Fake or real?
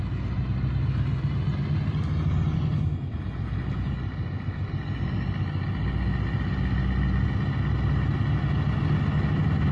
real